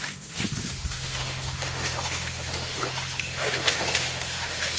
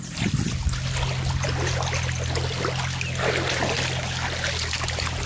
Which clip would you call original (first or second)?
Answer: second